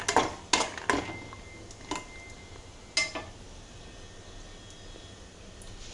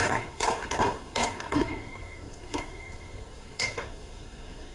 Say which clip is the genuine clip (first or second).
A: first